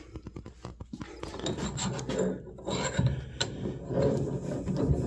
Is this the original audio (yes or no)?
yes